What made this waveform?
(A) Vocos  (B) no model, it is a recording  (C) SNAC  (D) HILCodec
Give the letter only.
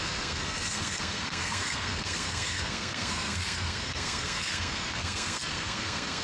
C